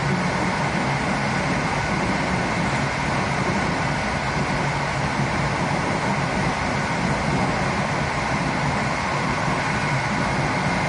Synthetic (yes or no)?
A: no